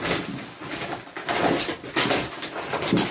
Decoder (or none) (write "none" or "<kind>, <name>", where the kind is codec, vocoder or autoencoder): none